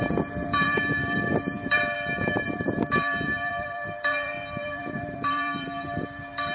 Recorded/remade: remade